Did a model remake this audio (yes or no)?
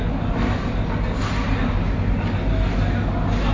no